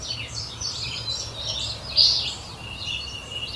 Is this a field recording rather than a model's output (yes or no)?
no